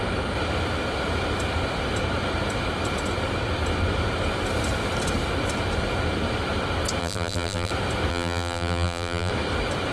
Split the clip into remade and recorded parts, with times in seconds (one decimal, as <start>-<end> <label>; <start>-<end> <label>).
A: 0.0-7.0 recorded; 7.0-7.7 remade; 7.7-8.1 recorded; 8.1-9.3 remade; 9.3-9.9 recorded